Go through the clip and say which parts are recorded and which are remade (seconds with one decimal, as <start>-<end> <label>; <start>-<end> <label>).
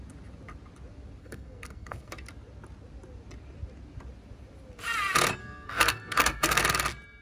0.0-1.2 recorded; 1.2-2.1 remade; 2.1-5.4 recorded; 5.4-6.6 remade; 6.6-7.2 recorded